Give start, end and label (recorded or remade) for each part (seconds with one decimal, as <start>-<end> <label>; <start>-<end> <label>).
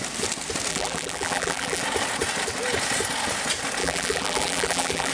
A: 0.0-0.7 recorded; 0.7-1.8 remade; 1.8-3.8 recorded; 3.8-5.1 remade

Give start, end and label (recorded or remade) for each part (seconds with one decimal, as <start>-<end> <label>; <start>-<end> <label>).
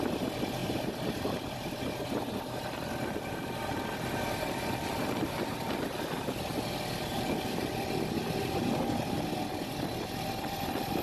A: 0.0-7.1 recorded; 7.1-7.7 remade; 7.7-11.0 recorded